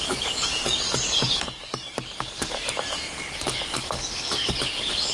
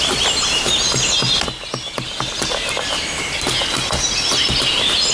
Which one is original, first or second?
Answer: second